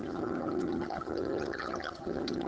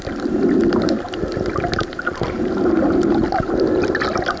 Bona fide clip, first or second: second